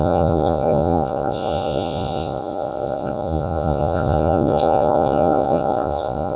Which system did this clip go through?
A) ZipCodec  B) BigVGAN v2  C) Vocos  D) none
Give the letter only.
C